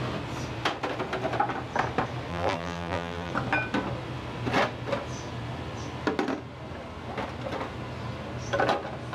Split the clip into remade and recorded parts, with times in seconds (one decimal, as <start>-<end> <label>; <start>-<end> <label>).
0.0-2.3 recorded; 2.3-3.3 remade; 3.3-9.1 recorded